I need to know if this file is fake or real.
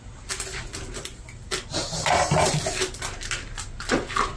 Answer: real